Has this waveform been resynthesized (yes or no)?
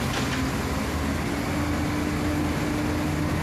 no